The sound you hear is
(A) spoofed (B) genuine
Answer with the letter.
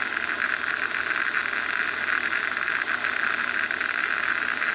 B